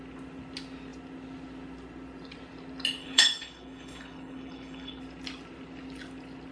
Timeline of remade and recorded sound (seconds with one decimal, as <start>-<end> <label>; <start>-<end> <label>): 0.0-3.0 recorded; 3.0-5.0 remade; 5.0-6.5 recorded

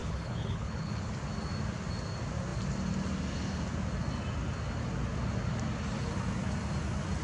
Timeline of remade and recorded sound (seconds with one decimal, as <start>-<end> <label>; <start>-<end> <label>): 0.0-1.1 remade; 1.1-7.2 recorded

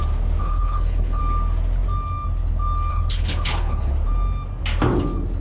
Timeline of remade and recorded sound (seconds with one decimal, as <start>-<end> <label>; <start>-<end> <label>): 0.0-0.4 recorded; 0.4-1.2 remade; 1.2-2.9 recorded; 2.9-3.9 remade; 3.9-5.4 recorded

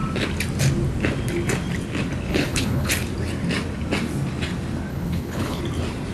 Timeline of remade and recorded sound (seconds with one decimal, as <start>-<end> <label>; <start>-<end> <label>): 0.0-2.3 recorded; 2.3-2.9 remade; 2.9-4.9 recorded; 4.9-5.6 remade; 5.6-6.1 recorded

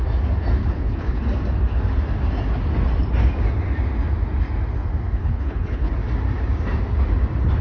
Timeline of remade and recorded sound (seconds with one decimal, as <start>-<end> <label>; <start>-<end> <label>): 0.0-0.6 recorded; 0.6-1.2 remade; 1.2-5.2 recorded; 5.2-5.9 remade; 5.9-7.6 recorded

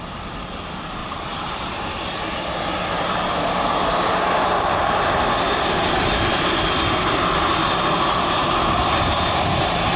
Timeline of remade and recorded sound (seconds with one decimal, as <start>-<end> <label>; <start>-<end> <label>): 0.0-10.0 recorded

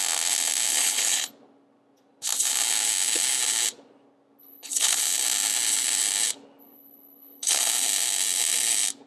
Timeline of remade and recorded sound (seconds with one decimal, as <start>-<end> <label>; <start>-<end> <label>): 0.0-0.7 recorded; 0.7-1.3 remade; 1.3-4.4 recorded; 4.4-5.0 remade; 5.0-6.6 recorded; 6.6-7.6 remade; 7.6-9.1 recorded

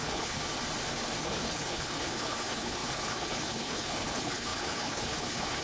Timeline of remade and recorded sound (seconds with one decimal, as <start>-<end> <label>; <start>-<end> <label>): 0.0-0.4 remade; 0.4-1.2 recorded; 1.2-5.6 remade